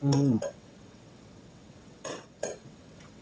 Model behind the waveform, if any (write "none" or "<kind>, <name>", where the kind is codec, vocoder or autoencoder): vocoder, WaveNeXt